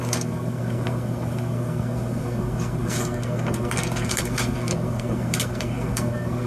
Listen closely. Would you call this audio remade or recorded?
remade